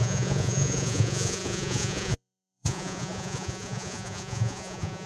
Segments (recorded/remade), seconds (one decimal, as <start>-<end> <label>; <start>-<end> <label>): 0.0-5.1 remade